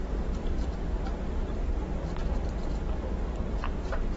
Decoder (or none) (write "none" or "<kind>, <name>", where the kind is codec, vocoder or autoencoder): none